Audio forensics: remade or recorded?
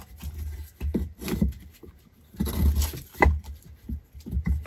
recorded